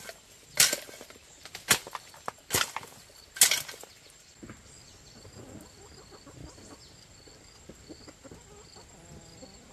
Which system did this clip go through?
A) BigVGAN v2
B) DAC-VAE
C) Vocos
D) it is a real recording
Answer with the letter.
D